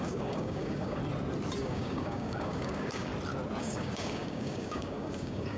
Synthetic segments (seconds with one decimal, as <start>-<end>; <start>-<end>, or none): 0.0-1.0; 1.6-3.1; 3.6-5.6